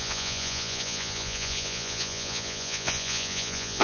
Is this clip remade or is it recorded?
remade